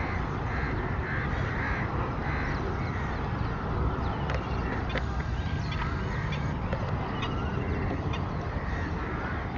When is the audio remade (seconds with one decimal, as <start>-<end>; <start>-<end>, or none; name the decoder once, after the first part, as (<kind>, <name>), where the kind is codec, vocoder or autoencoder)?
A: none